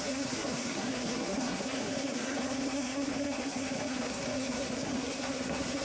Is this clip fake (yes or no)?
yes